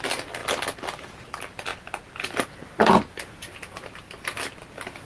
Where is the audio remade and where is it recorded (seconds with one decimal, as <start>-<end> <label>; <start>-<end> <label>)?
0.0-5.1 recorded